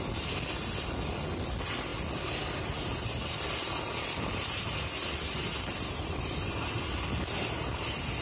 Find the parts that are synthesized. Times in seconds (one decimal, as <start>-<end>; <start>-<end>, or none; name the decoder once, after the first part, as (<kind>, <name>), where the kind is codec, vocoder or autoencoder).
none